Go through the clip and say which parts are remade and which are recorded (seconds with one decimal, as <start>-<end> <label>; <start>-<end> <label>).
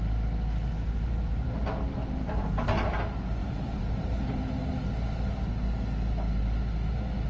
0.0-0.7 recorded; 0.7-2.5 remade; 2.5-3.4 recorded; 3.4-4.7 remade; 4.7-7.3 recorded